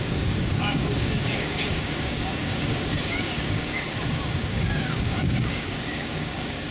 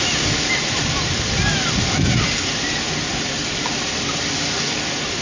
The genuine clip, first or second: second